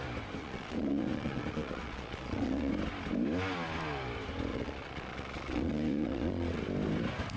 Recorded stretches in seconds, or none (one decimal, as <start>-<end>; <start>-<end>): 0.0-0.4; 2.7-4.5; 6.6-7.4